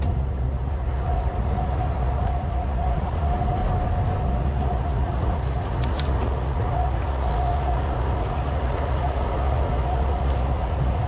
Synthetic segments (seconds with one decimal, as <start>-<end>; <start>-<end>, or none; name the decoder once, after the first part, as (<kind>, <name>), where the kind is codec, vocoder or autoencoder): 0.0-3.6 (vocoder, Vocos); 4.2-11.1